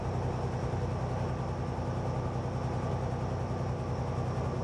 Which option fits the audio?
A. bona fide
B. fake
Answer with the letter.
A